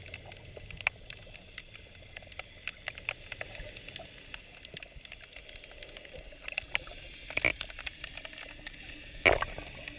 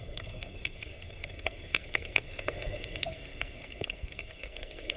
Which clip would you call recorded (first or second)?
first